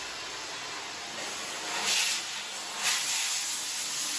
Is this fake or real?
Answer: real